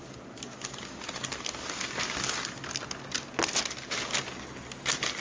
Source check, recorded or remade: recorded